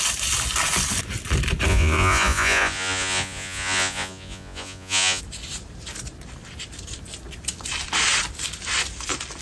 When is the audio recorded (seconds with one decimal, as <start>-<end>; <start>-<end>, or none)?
0.0-1.7; 5.2-9.4